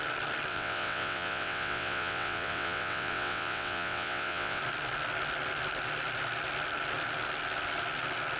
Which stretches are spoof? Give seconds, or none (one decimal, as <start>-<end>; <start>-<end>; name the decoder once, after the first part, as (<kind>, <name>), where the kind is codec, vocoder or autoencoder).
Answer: 0.5-4.6 (vocoder, WaveNeXt)